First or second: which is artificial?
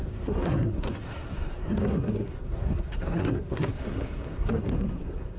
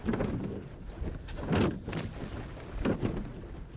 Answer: first